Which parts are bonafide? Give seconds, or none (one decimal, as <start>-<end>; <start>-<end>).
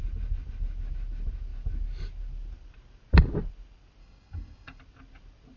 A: 0.0-4.0; 4.8-5.6